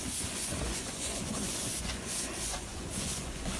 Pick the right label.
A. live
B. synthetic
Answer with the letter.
B